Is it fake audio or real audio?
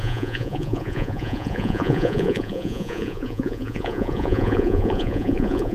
fake